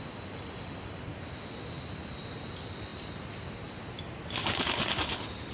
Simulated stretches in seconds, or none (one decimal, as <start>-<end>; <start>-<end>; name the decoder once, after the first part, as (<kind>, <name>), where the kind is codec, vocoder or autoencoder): none